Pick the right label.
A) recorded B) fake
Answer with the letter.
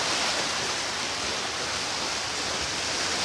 A